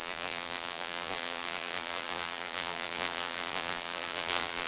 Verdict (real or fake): fake